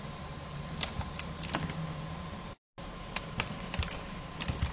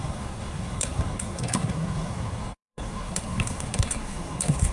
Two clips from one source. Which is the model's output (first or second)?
second